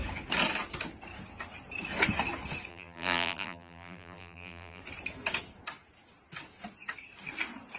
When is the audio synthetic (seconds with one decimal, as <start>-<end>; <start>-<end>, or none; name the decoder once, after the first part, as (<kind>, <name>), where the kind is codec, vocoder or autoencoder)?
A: 2.7-4.8 (vocoder, BigVGAN v2)